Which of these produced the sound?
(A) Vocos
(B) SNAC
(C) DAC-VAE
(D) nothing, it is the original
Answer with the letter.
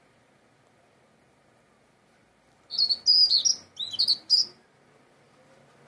D